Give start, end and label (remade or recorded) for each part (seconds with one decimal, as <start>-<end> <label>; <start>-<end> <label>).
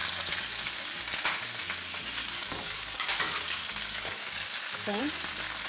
0.0-0.8 remade; 0.8-2.2 recorded; 2.2-5.0 remade; 5.0-5.7 recorded